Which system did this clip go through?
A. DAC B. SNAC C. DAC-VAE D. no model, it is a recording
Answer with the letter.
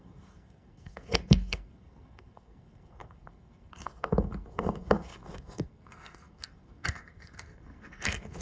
B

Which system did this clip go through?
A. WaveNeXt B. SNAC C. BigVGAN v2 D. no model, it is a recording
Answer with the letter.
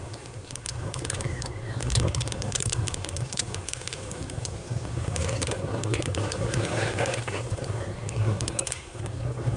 B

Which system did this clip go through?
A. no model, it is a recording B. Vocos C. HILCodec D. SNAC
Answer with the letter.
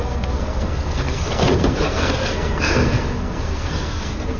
D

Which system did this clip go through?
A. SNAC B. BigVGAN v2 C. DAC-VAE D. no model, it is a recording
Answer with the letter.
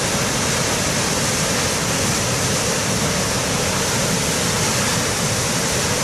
D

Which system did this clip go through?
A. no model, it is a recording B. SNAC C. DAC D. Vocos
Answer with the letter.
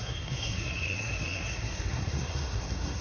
B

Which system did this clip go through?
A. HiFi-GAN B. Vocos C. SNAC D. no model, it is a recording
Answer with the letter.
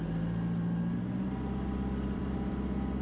D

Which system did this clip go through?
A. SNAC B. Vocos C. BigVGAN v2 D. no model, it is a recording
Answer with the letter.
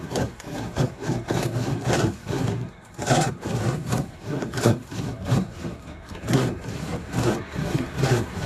A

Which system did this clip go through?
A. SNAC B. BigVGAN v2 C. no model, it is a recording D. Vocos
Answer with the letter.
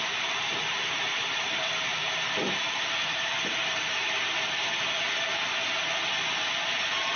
C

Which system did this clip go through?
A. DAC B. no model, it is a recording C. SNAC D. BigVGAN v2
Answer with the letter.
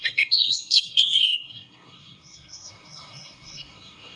C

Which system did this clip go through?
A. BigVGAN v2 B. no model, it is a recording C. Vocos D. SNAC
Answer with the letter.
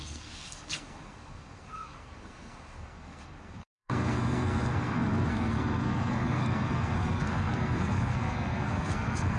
D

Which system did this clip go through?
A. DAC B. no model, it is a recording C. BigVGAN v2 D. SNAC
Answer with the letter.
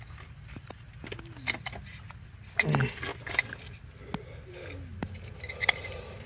B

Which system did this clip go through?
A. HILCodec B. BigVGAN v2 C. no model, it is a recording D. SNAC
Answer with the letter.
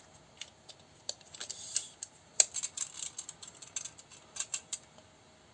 C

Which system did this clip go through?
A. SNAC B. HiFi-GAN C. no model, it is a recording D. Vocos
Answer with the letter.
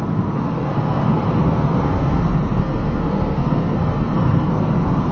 A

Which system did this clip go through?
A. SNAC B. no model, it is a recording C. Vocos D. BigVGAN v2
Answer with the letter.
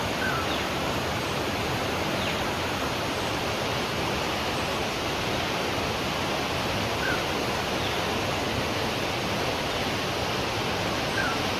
B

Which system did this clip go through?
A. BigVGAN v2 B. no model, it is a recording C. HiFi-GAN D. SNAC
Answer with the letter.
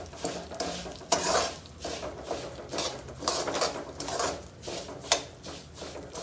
B